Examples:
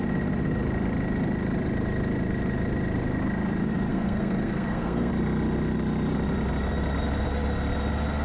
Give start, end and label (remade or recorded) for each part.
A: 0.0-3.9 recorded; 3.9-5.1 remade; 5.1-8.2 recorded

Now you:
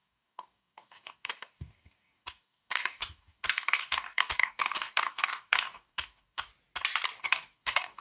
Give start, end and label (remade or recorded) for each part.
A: 0.0-6.5 remade; 6.5-7.2 recorded; 7.2-8.0 remade

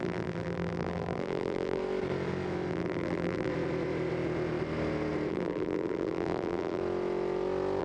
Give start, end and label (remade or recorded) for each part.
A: 0.0-1.8 remade; 1.8-2.7 recorded; 2.7-3.5 remade; 3.5-5.3 recorded; 5.3-6.8 remade; 6.8-7.8 recorded

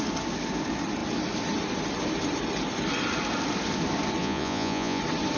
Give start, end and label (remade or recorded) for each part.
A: 0.0-4.2 recorded; 4.2-5.0 remade; 5.0-5.4 recorded